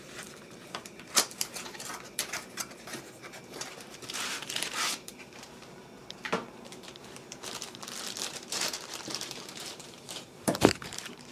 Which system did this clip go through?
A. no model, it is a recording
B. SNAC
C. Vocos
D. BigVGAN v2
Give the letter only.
D